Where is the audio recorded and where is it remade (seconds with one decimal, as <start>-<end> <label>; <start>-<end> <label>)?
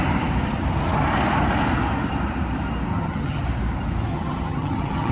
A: 0.0-2.9 recorded; 2.9-3.4 remade; 3.4-4.1 recorded; 4.1-5.1 remade